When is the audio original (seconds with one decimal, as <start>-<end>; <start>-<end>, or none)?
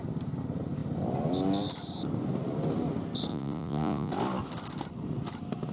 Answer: 0.0-3.3; 4.1-5.7